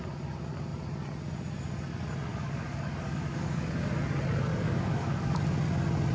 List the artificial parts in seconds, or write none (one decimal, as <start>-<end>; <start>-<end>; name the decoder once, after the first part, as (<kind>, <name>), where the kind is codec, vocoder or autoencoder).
2.3-3.9 (codec, DAC); 4.5-5.4